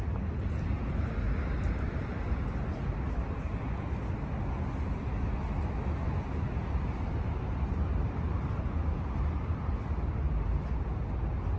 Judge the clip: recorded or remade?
recorded